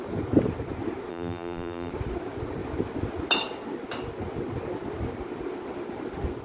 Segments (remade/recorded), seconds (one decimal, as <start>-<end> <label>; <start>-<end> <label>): 0.0-1.1 recorded; 1.1-1.9 remade; 1.9-6.4 recorded